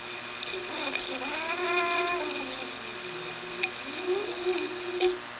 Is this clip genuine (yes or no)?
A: yes